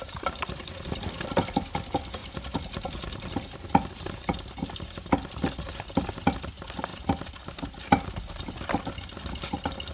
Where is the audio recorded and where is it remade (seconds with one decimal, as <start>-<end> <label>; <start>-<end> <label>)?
0.0-2.2 remade; 2.2-6.5 recorded; 6.5-6.9 remade; 6.9-9.5 recorded; 9.5-9.9 remade